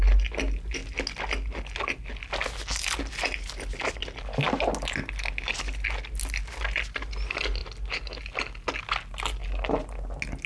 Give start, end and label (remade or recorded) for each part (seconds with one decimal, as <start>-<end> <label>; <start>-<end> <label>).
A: 0.0-10.5 recorded